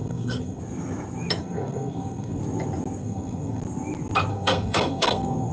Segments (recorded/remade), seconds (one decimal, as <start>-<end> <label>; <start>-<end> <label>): 0.0-0.6 remade; 0.6-1.4 recorded; 1.4-2.4 remade; 2.4-3.0 recorded; 3.0-3.6 remade; 3.6-4.3 recorded; 4.3-5.5 remade